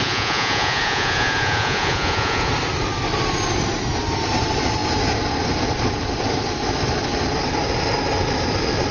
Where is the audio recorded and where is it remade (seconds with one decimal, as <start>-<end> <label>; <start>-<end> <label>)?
0.0-2.5 remade; 2.5-8.9 recorded